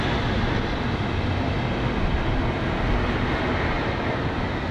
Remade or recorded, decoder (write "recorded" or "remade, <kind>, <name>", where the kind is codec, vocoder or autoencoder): recorded